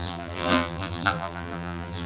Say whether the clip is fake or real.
fake